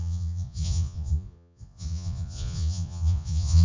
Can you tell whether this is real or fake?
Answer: fake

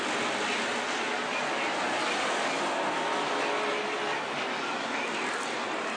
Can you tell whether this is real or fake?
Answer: real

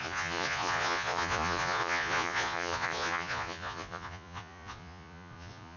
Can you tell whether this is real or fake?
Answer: fake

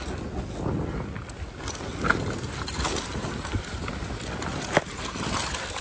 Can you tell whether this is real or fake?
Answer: real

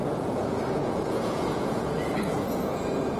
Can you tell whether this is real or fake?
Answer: fake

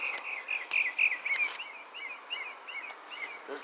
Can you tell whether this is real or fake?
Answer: real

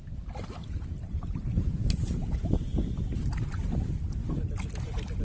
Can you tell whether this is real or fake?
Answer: real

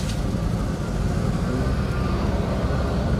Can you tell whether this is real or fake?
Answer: real